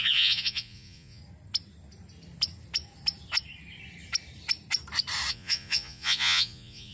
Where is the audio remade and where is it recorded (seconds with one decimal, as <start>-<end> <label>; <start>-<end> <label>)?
0.0-1.2 remade; 1.2-5.3 recorded; 5.3-6.9 remade